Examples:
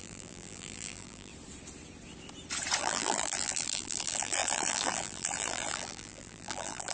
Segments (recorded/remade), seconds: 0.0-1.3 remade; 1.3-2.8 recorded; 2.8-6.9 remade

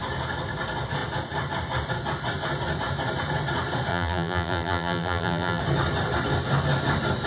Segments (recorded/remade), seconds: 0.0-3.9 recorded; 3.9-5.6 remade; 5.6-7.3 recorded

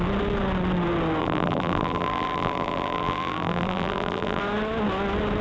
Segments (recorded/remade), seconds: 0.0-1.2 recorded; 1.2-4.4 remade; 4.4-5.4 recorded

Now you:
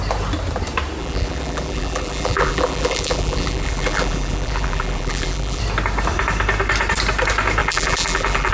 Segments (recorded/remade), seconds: 0.0-1.0 recorded; 1.0-5.6 remade; 5.6-7.6 recorded; 7.6-8.5 remade

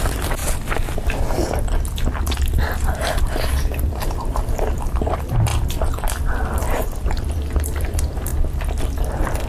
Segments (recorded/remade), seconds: 0.0-0.4 remade; 0.4-3.2 recorded; 3.2-5.5 remade; 5.5-6.2 recorded; 6.2-8.3 remade; 8.3-8.8 recorded; 8.8-9.5 remade